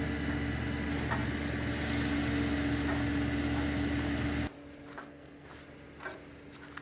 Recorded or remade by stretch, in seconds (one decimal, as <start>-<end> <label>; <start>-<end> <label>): 0.0-5.0 recorded; 5.0-5.5 remade; 5.5-6.8 recorded